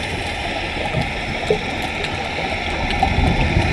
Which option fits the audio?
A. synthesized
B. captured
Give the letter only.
B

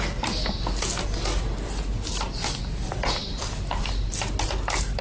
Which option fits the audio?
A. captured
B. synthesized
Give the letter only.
A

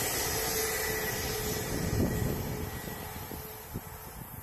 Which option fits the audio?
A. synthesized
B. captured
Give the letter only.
B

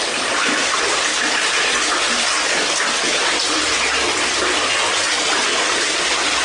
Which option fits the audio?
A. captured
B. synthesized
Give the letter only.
A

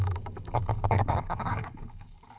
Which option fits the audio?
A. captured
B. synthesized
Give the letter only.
B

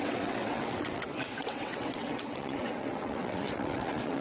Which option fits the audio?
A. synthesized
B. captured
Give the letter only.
A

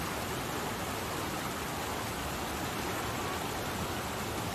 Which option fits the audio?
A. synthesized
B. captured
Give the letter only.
B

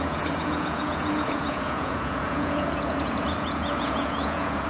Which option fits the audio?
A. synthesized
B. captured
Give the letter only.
A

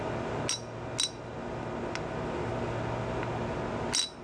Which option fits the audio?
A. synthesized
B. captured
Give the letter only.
B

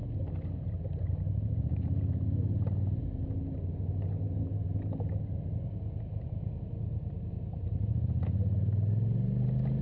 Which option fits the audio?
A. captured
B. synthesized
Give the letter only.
A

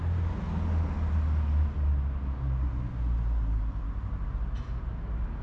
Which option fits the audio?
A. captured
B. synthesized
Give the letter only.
A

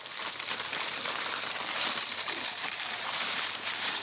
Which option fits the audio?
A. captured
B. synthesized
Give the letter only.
B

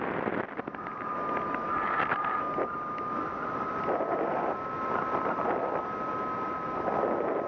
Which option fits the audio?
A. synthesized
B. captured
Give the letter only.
B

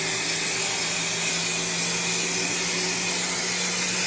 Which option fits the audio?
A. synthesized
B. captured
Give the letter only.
B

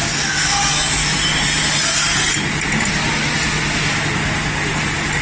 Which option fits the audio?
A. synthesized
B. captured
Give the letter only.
B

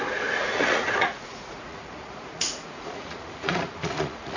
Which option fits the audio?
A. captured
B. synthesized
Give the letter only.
B